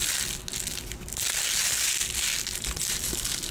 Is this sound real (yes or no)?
yes